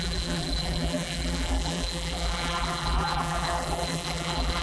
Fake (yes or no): yes